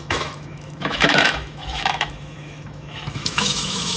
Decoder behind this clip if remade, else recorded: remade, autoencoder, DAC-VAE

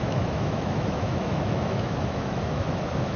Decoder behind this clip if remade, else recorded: remade, autoencoder, DAC-VAE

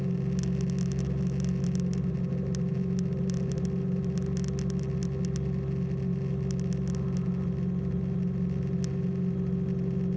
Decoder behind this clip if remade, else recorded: recorded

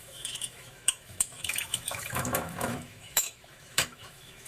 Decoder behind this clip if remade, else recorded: remade, autoencoder, DAC-VAE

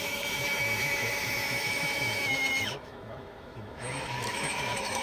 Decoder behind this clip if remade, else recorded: remade, autoencoder, DAC-VAE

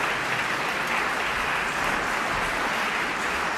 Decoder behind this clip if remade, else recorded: recorded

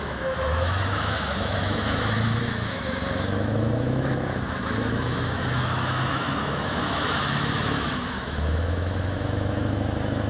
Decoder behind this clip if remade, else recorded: remade, autoencoder, DAC-VAE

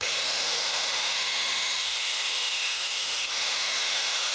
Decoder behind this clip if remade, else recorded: remade, autoencoder, DAC-VAE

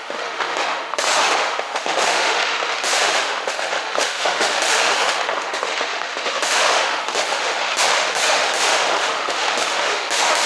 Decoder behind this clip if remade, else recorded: remade, autoencoder, DAC-VAE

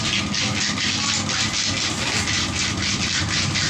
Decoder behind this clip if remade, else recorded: recorded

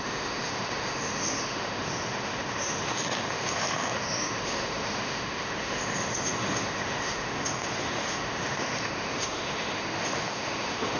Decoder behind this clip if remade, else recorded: remade, autoencoder, DAC-VAE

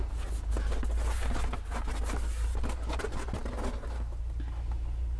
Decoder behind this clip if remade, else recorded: recorded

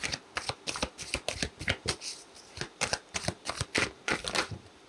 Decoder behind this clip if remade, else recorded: recorded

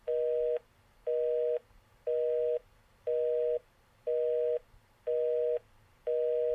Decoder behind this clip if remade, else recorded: recorded